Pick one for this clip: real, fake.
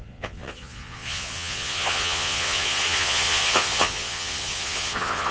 fake